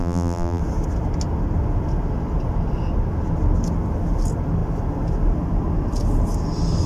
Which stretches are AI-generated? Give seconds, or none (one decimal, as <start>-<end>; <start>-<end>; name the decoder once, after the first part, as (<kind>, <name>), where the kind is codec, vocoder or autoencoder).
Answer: 0.0-0.6 (vocoder, BigVGAN v2)